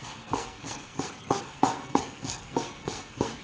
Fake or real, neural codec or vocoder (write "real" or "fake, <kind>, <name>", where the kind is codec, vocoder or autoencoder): fake, codec, SNAC